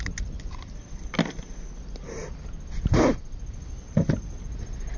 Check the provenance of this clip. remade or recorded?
recorded